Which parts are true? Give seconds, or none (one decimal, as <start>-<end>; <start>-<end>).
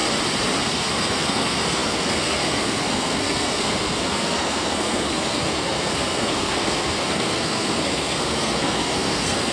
0.0-0.6